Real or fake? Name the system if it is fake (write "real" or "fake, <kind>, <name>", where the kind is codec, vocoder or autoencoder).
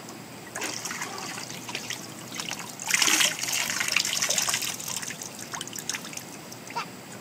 real